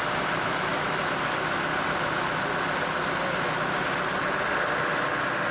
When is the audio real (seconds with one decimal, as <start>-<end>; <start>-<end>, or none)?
0.0-5.5